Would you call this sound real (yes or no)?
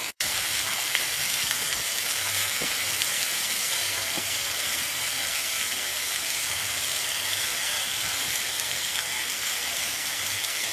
no